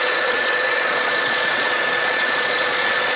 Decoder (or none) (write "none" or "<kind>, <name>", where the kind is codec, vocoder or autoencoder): vocoder, Vocos